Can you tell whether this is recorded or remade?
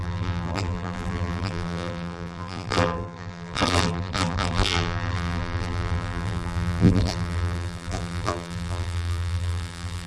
remade